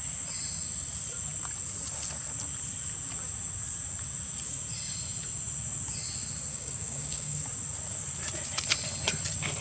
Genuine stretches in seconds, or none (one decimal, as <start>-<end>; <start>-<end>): 0.0-6.5; 7.4-9.6